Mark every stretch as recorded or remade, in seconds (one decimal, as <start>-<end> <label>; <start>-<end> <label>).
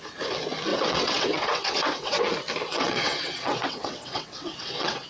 0.0-0.7 recorded; 0.7-2.2 remade; 2.2-2.7 recorded; 2.7-5.1 remade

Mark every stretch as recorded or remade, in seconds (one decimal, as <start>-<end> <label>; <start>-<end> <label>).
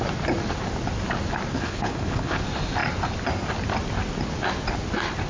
0.0-1.5 recorded; 1.5-2.4 remade; 2.4-5.3 recorded